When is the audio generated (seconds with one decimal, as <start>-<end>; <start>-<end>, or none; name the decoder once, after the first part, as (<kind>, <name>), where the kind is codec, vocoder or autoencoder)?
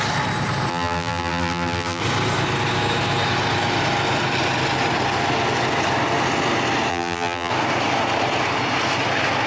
0.7-2.0 (vocoder, BigVGAN v2); 6.9-7.5